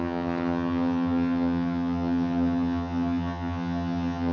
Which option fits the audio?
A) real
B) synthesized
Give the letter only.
B